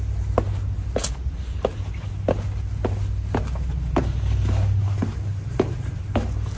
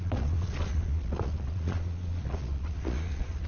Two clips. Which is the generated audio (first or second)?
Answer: second